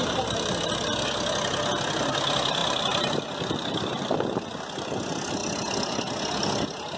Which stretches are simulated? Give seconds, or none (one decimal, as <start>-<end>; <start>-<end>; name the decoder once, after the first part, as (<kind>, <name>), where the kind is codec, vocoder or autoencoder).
0.0-0.7 (vocoder, BigVGAN v2); 2.6-4.9